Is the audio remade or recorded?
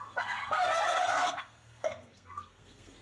remade